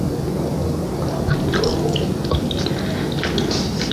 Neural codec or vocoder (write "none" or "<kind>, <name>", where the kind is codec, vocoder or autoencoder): none